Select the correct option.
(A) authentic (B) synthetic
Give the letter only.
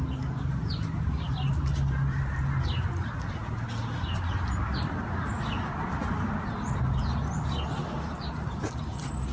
A